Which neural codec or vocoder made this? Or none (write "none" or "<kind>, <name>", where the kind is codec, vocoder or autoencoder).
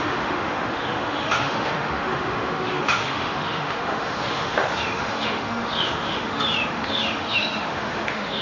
autoencoder, DAC-VAE